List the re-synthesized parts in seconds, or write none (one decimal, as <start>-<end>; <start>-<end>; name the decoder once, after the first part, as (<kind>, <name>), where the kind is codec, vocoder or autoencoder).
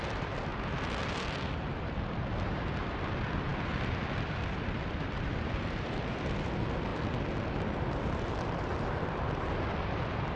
0.0-6.9 (vocoder, BigVGAN v2); 7.5-10.4